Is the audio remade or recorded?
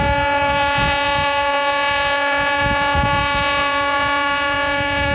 remade